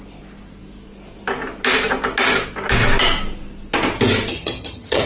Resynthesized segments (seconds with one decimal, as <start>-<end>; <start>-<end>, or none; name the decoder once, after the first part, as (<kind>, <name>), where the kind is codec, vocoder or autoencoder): 4.3-5.1 (vocoder, HiFi-GAN)